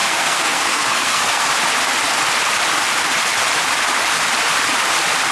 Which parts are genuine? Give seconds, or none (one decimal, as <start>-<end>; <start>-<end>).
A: 1.5-5.3